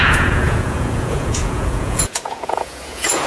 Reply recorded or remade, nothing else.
remade